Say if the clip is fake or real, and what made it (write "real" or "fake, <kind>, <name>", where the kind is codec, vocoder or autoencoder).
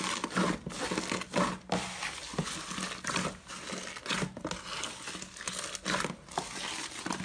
real